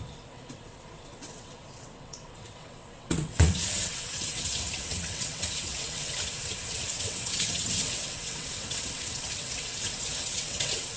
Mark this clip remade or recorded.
remade